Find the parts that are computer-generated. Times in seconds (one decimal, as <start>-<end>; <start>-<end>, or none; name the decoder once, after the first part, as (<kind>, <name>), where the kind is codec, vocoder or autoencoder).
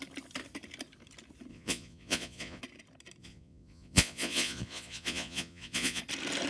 1.5-2.6 (vocoder, Vocos); 3.2-6.0